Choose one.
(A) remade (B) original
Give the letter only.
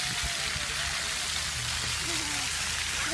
B